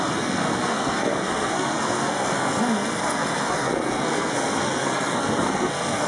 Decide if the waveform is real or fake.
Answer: fake